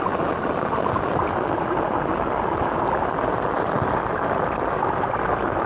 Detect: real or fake real